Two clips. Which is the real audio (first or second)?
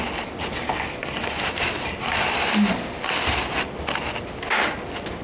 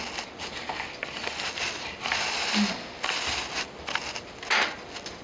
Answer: second